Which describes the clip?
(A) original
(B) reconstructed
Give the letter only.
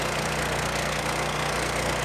B